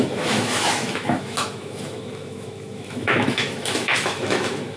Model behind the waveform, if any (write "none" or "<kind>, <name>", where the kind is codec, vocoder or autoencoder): autoencoder, DAC-VAE